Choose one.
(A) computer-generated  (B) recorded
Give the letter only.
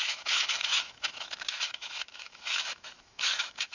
A